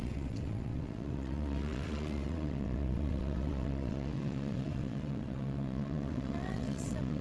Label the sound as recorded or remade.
remade